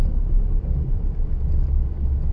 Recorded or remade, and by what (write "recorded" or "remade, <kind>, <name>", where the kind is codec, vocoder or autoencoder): recorded